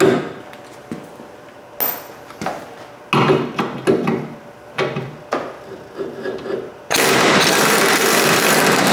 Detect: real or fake real